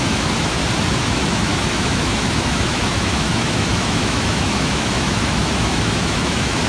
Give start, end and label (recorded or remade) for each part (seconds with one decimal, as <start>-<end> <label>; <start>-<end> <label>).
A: 0.0-0.6 remade; 0.6-1.1 recorded; 1.1-6.7 remade